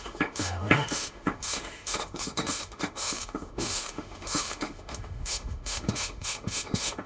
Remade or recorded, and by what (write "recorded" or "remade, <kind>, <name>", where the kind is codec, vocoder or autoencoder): remade, autoencoder, DAC-VAE